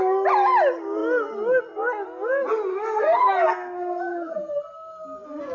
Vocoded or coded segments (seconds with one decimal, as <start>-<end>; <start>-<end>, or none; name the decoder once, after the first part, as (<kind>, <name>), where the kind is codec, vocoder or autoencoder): 2.7-4.6 (codec, SNAC)